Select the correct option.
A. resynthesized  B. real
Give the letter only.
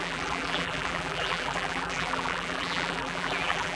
A